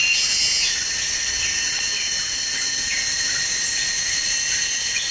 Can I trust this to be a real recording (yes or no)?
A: yes